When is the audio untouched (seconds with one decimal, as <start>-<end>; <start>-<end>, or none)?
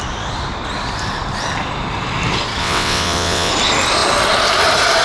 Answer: 0.0-2.6; 3.5-5.0